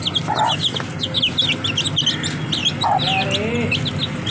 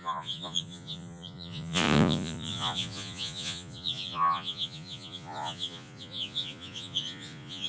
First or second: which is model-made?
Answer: second